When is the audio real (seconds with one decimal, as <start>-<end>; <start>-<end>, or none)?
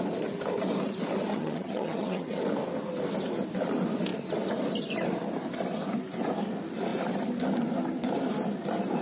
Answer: 0.0-1.3; 2.4-9.0